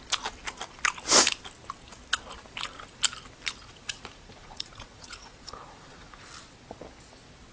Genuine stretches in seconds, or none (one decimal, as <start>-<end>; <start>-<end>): 0.0-3.6; 6.3-7.5

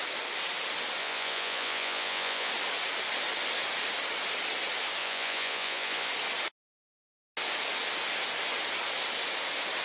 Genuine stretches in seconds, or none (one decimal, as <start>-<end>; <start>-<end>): 0.0-1.0; 2.5-5.0; 6.1-9.8

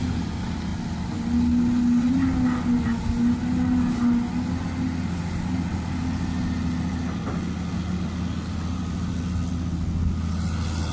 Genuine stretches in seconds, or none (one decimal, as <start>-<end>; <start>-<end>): 0.0-10.9

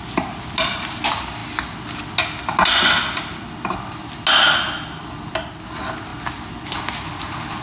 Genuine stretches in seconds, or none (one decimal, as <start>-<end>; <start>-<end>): 0.0-7.6